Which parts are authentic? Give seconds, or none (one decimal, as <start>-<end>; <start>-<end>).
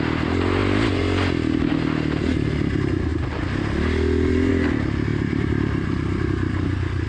0.0-5.1